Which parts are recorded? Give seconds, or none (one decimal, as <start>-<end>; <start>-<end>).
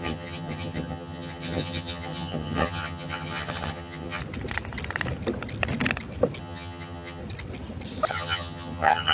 4.2-6.4; 7.2-8.1